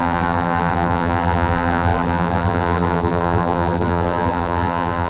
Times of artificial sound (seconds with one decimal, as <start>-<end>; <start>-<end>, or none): 0.0-5.1